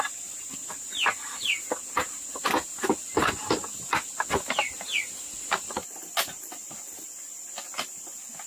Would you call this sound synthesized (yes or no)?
no